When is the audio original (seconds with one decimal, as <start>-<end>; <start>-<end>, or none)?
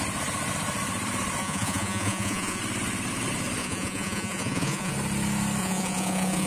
0.0-1.4; 2.6-3.6; 4.9-5.6